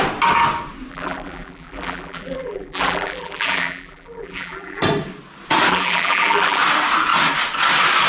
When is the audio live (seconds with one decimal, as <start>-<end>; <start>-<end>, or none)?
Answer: 0.0-0.9; 4.8-5.7; 6.6-8.1